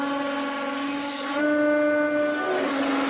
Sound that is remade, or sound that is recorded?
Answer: recorded